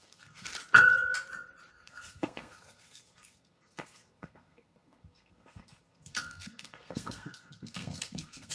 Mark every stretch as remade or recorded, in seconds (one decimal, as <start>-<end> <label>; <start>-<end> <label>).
0.0-0.5 remade; 0.5-1.7 recorded; 1.7-8.5 remade